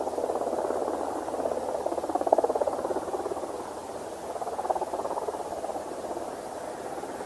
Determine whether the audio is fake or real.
real